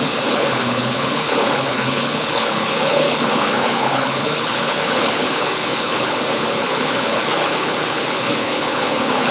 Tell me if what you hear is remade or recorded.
remade